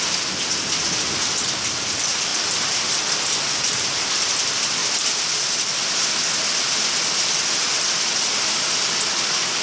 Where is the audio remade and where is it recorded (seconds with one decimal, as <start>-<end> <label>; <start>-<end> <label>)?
0.0-2.3 recorded; 2.3-4.1 remade; 4.1-9.6 recorded